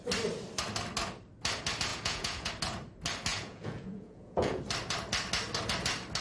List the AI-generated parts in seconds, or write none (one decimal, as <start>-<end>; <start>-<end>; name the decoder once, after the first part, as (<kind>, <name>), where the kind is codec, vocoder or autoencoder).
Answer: 1.9-2.5 (vocoder, Vocos); 3.3-4.6